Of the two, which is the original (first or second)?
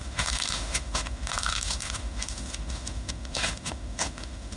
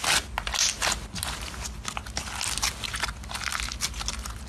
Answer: second